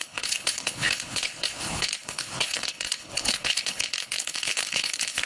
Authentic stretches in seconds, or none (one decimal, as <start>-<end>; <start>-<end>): none